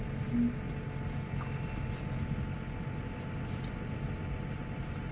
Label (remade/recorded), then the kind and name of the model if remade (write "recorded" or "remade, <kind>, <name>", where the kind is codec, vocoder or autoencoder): recorded